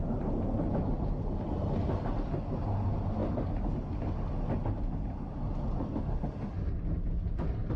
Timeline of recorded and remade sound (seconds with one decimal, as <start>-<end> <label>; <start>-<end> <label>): 0.0-7.8 recorded